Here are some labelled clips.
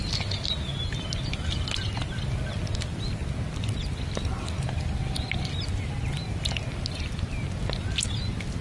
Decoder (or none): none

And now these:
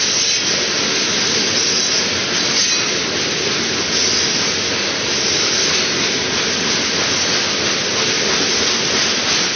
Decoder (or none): none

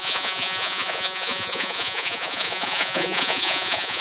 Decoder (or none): vocoder, Vocos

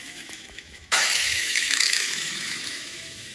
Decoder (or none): autoencoder, DAC-VAE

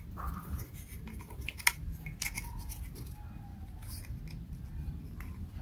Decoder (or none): none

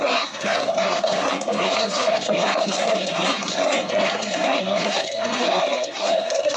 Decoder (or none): codec, SNAC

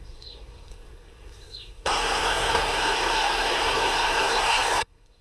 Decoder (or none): codec, SNAC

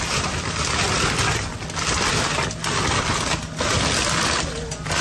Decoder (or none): none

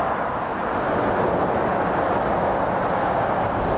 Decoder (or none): none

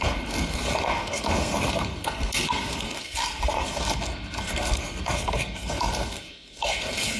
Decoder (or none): codec, SNAC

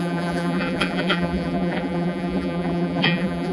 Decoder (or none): vocoder, BigVGAN v2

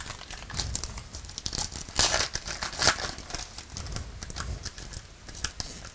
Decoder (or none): none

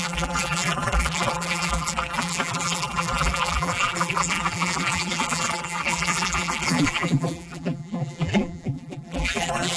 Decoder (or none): vocoder, BigVGAN v2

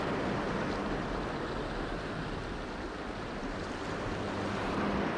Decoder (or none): none